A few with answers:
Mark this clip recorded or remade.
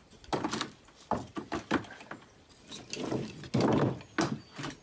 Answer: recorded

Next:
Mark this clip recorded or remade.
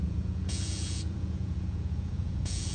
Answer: remade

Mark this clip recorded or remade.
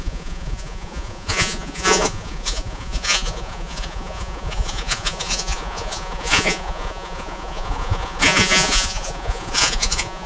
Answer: remade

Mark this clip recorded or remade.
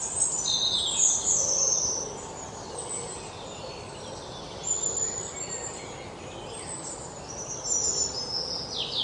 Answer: recorded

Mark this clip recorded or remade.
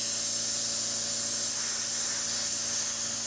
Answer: recorded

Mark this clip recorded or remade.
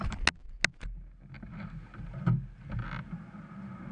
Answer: recorded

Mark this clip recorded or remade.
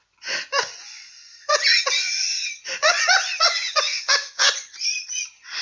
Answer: remade